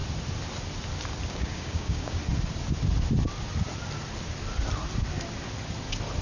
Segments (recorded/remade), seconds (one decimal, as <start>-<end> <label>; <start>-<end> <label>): 0.0-1.3 recorded; 1.3-2.2 remade; 2.2-6.2 recorded